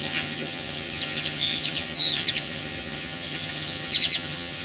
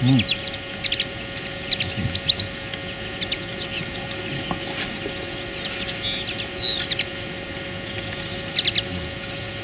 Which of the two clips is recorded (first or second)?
second